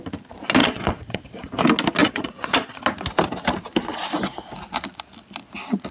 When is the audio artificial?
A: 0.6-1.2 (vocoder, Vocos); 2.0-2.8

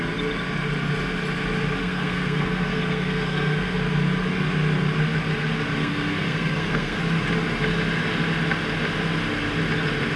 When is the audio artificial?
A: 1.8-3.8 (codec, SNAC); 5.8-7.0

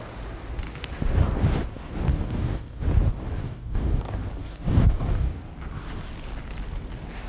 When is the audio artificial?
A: 2.1-2.8 (codec, DAC); 3.4-4.0; 4.4-5.4

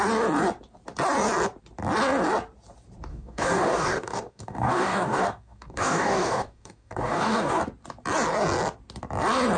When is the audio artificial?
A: 3.1-7.6 (codec, DAC)

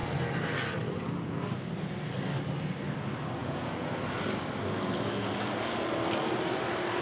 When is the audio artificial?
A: 3.4-3.9 (vocoder, Vocos)